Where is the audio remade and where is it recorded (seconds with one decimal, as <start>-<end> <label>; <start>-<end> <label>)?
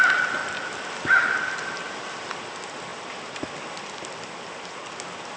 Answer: 0.0-5.4 recorded